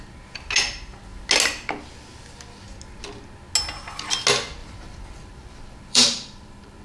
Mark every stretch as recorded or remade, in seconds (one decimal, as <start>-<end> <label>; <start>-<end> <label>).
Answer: 0.0-4.6 recorded; 4.6-6.8 remade